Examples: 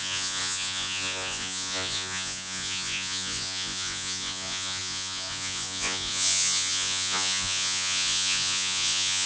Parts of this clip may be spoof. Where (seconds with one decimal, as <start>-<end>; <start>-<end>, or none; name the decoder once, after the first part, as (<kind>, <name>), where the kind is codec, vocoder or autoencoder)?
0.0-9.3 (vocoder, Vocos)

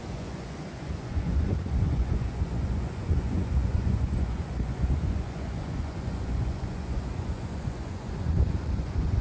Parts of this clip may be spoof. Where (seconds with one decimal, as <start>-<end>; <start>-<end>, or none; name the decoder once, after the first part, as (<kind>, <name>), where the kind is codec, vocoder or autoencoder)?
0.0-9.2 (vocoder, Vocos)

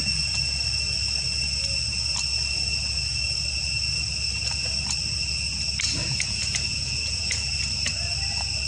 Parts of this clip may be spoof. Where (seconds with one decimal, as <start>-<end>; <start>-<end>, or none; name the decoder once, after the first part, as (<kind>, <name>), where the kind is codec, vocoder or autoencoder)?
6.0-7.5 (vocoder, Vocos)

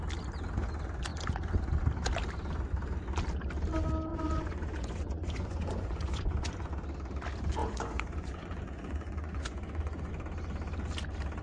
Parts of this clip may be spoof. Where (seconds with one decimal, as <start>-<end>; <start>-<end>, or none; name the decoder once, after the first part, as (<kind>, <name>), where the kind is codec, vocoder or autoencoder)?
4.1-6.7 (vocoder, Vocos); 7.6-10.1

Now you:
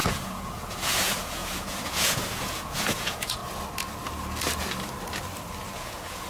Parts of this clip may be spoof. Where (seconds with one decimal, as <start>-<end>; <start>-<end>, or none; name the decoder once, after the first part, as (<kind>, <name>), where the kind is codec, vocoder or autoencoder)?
0.0-3.4 (vocoder, Vocos); 5.6-6.3

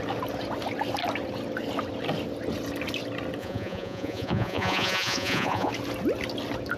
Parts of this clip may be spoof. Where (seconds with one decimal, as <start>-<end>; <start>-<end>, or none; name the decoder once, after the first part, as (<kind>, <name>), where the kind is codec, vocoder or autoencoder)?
3.4-5.7 (vocoder, Vocos)